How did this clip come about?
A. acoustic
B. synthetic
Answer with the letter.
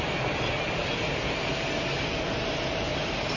A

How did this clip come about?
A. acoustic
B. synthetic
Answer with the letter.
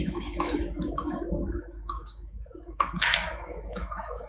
B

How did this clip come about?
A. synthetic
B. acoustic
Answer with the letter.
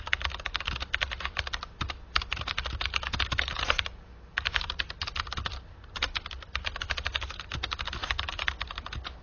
B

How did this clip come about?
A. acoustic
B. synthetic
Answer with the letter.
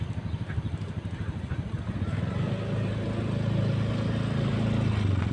A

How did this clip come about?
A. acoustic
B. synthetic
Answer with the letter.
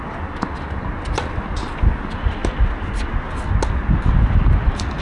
A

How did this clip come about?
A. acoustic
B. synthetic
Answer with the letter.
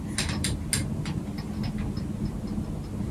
A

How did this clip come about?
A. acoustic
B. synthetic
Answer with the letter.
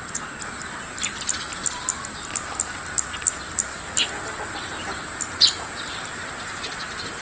A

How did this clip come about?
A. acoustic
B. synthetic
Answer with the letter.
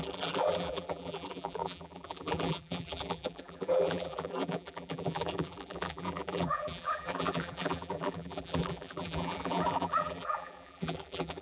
B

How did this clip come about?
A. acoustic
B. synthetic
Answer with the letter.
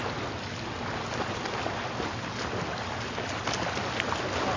A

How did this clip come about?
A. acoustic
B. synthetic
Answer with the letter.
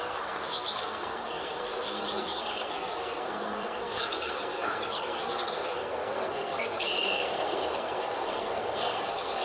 B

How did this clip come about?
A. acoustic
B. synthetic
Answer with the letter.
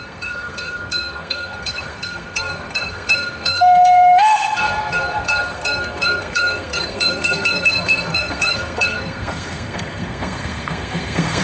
B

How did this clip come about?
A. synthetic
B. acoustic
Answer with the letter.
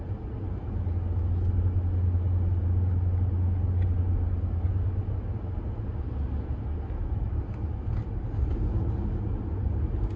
B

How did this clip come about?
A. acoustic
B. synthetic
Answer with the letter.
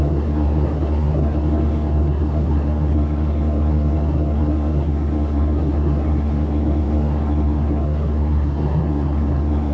B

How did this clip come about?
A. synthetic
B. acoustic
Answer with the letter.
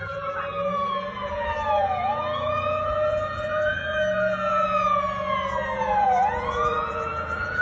A